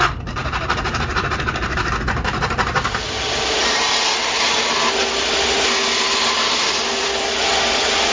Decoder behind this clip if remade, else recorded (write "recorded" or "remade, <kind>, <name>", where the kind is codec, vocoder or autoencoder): recorded